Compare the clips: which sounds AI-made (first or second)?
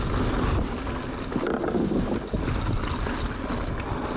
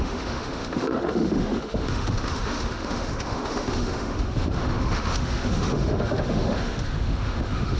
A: second